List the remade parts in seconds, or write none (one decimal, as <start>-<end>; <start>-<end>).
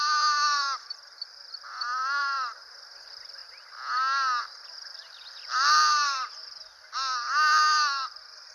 0.0-3.4; 4.4-8.5